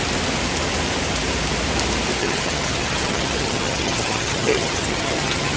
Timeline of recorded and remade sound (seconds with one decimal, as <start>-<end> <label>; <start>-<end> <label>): 0.0-2.2 recorded; 2.2-5.6 remade